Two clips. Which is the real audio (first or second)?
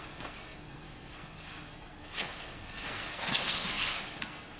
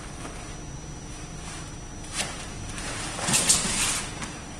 second